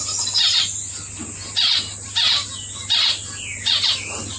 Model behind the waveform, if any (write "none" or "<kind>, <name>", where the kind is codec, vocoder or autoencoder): none